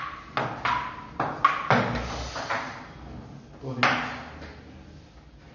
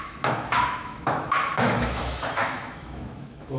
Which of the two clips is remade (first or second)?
second